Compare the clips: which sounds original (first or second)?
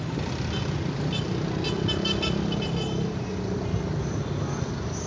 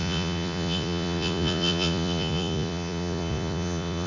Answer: first